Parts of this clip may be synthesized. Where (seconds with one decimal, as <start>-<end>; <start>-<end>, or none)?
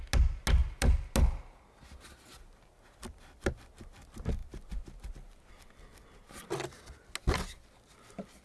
none